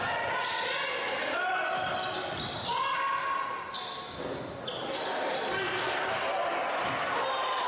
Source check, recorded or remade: recorded